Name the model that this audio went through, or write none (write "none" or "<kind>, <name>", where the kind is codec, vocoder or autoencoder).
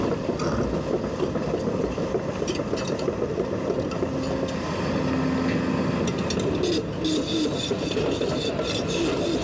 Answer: none